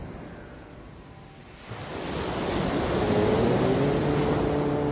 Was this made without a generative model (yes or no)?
yes